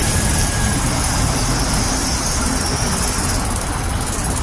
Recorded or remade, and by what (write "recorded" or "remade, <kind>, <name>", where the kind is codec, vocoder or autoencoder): recorded